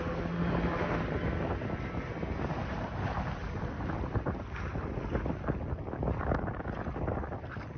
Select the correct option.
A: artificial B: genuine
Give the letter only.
B